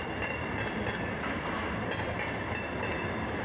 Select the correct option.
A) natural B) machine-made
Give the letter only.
A